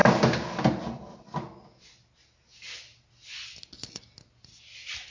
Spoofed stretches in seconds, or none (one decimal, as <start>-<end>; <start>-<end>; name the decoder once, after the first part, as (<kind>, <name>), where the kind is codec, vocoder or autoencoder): none